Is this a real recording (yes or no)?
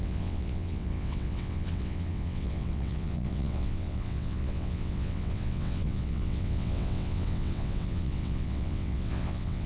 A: no